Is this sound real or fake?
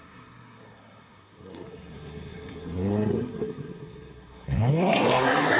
fake